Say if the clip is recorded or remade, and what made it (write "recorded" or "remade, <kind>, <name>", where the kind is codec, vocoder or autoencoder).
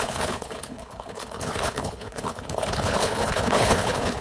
remade, codec, HILCodec